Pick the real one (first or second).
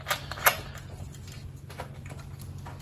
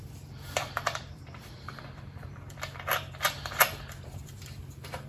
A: first